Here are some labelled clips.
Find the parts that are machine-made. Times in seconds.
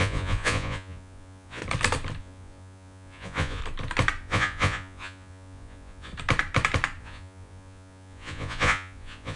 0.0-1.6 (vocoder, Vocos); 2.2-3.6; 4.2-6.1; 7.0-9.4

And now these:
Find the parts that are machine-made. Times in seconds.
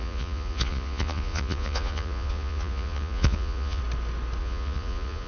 0.0-3.8 (vocoder, Vocos); 4.4-5.3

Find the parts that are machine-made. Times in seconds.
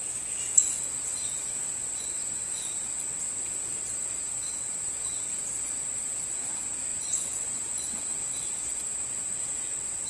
1.7-2.6 (vocoder, Vocos); 6.9-8.0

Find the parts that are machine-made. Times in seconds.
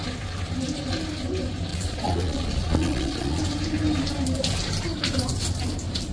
1.7-3.4 (vocoder, Vocos)